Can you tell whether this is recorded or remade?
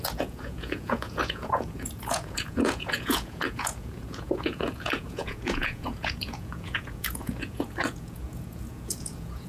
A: remade